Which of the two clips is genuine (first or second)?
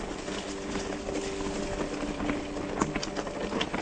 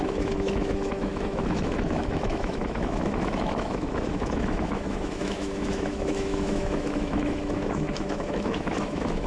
first